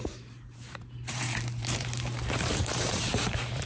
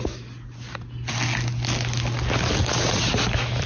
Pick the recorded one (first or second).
second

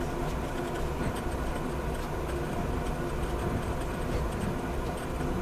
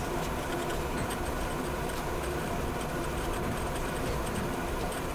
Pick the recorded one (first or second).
first